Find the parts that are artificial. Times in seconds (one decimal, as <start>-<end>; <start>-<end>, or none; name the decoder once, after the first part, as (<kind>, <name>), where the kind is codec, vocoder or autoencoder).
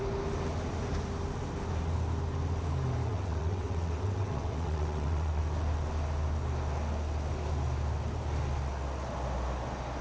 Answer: 3.1-5.4 (vocoder, WaveNeXt)